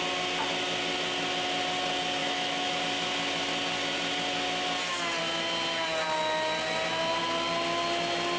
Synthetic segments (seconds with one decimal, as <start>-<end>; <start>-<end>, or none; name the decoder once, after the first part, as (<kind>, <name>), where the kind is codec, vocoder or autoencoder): 2.2-2.8 (autoencoder, DAC-VAE)